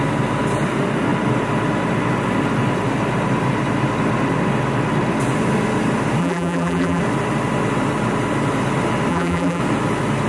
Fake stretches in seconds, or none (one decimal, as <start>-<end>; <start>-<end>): 6.2-7.0; 9.1-9.6